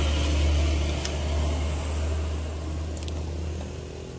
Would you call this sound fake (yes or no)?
no